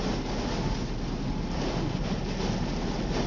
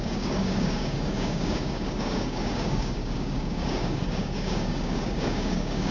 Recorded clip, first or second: first